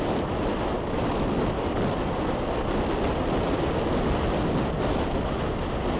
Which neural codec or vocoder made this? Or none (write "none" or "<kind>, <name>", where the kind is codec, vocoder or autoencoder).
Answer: none